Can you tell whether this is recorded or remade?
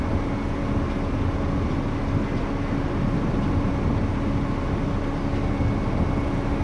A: recorded